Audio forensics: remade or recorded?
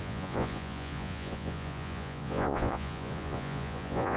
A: remade